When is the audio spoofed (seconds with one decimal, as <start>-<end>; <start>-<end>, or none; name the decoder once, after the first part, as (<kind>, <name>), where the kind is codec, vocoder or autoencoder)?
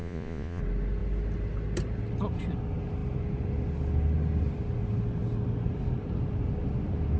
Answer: 0.0-0.6 (vocoder, Vocos)